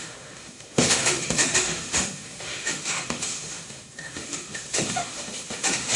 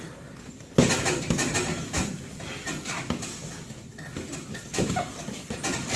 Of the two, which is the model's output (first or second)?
first